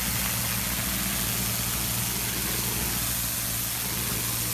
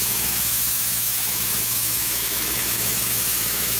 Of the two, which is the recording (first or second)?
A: first